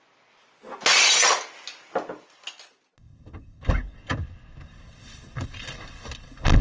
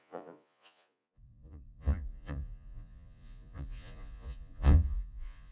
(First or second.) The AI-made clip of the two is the second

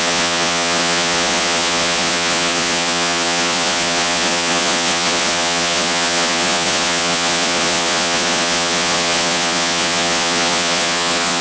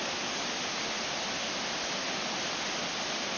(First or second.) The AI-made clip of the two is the first